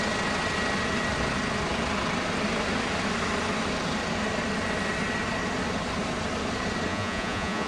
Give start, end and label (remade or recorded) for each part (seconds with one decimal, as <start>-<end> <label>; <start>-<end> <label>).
0.0-6.9 recorded; 6.9-7.7 remade